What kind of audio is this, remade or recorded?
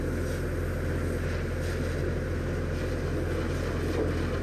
recorded